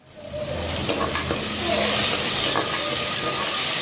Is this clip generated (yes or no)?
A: no